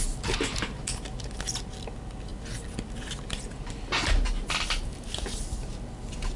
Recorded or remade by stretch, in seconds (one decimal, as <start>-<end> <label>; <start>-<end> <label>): 0.0-6.4 recorded